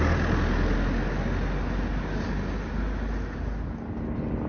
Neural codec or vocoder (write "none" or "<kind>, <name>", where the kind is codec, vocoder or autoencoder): none